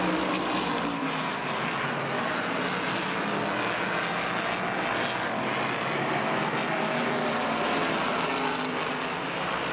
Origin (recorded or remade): recorded